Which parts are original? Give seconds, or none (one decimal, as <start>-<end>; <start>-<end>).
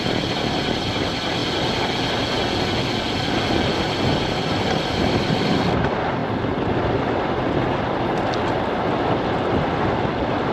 1.4-3.8; 6.2-10.5